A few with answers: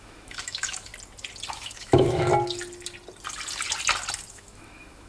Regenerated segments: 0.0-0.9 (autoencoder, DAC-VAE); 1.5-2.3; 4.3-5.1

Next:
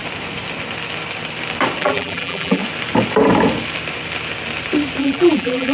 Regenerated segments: 1.8-2.6 (vocoder, BigVGAN v2); 5.0-5.7

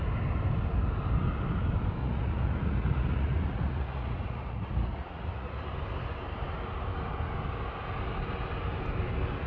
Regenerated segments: 2.0-5.7 (vocoder, Vocos)

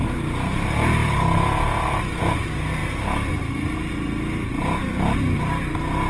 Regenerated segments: 4.8-5.6 (vocoder, BigVGAN v2)

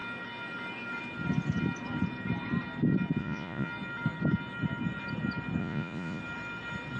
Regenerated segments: 3.2-3.7 (vocoder, Vocos); 5.6-6.2

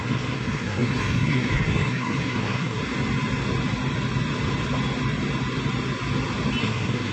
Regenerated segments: 0.0-2.8 (codec, SNAC); 6.6-7.1